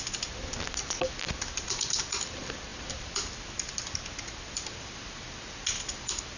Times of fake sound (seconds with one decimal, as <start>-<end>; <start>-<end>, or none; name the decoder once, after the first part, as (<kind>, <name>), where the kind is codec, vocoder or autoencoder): none